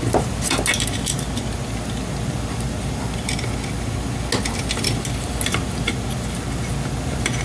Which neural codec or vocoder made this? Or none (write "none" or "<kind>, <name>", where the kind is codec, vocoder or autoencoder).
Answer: none